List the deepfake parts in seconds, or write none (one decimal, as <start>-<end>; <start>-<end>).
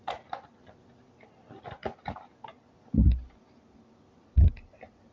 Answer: none